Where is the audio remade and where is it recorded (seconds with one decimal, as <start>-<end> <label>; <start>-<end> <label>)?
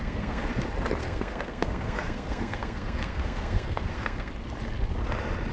0.0-0.5 remade; 0.5-1.0 recorded; 1.0-4.3 remade; 4.3-5.5 recorded